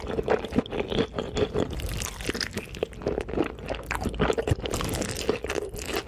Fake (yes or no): no